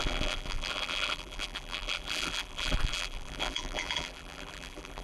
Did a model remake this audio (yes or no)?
yes